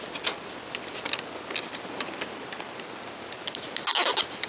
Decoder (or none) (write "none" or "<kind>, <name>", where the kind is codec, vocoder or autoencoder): none